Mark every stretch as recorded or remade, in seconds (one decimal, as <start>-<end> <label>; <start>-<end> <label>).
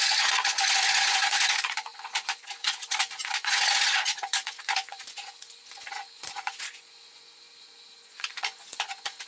0.0-9.3 remade